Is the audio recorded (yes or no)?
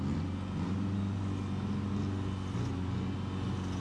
yes